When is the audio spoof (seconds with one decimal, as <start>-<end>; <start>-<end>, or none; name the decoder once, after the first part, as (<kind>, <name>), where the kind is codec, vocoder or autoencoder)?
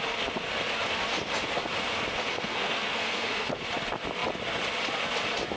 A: 2.3-3.6 (codec, SNAC)